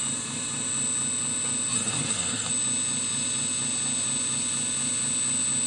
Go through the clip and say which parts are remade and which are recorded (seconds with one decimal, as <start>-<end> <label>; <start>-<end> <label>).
0.0-1.7 recorded; 1.7-2.5 remade; 2.5-5.7 recorded